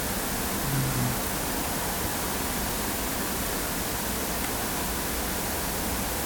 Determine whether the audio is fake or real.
real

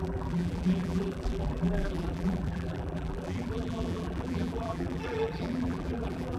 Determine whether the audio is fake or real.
fake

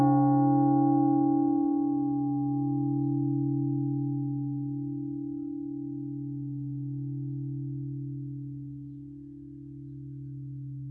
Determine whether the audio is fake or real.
real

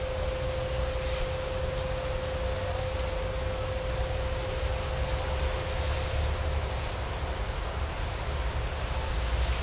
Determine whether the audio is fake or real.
real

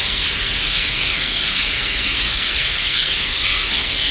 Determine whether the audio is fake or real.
fake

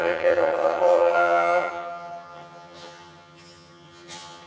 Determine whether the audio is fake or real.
fake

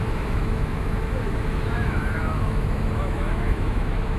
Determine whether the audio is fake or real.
fake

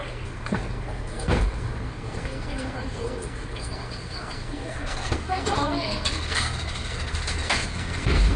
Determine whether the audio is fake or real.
fake